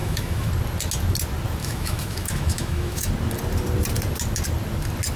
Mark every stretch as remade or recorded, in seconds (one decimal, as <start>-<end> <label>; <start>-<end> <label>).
0.0-0.5 remade; 0.5-1.6 recorded; 1.6-3.1 remade; 3.1-5.2 recorded